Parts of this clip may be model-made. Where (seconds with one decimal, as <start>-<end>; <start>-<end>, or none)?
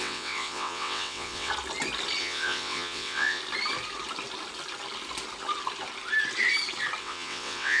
0.0-1.5; 2.2-3.4; 7.0-7.8